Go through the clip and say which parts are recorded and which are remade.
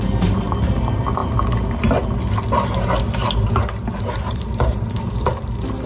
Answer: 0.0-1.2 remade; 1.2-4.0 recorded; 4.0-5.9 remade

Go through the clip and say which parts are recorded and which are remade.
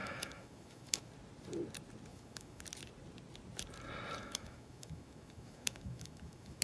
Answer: 0.0-1.1 remade; 1.1-2.1 recorded; 2.1-2.6 remade; 2.6-4.2 recorded; 4.2-6.6 remade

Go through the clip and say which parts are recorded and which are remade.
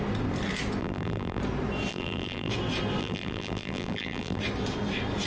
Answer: 0.0-0.8 recorded; 0.8-1.4 remade; 1.4-1.9 recorded; 1.9-2.5 remade; 2.5-3.0 recorded; 3.0-4.4 remade; 4.4-5.3 recorded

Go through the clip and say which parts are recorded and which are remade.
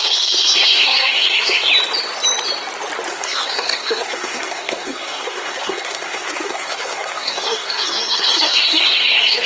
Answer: 0.0-1.7 remade; 1.7-3.1 recorded; 3.1-9.5 remade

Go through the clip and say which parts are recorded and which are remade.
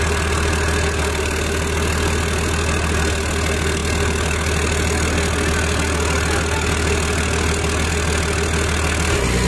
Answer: 0.0-9.5 recorded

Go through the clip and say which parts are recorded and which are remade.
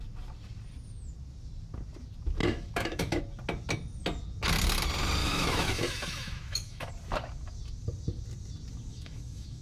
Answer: 0.0-2.4 recorded; 2.4-3.2 remade; 3.2-5.2 recorded; 5.2-6.9 remade; 6.9-8.9 recorded; 8.9-9.6 remade